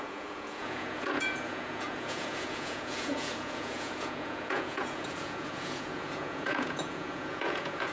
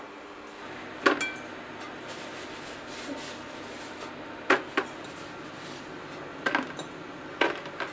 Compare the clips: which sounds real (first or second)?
second